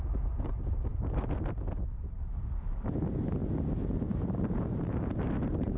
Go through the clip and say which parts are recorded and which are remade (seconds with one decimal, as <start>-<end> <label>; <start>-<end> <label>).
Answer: 0.0-3.4 remade; 3.4-4.1 recorded; 4.1-5.8 remade